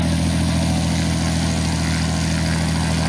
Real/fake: real